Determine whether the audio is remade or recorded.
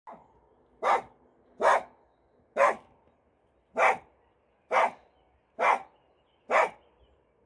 recorded